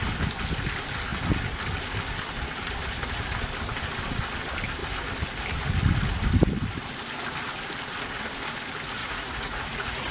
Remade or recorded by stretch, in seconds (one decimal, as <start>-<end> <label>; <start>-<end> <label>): 0.0-9.0 recorded; 9.0-10.1 remade